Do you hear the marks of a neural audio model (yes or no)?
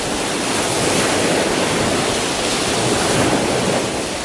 no